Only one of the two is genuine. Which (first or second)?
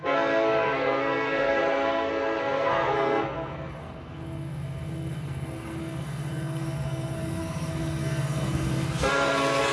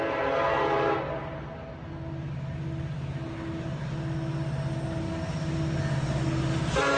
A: second